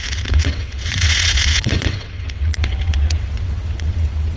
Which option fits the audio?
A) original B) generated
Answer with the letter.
B